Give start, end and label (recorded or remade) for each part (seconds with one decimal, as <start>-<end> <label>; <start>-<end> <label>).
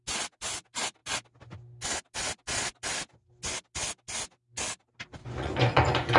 0.0-5.2 recorded; 5.2-6.2 remade